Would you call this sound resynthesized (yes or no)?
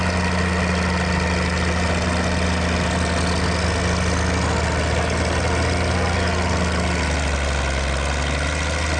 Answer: no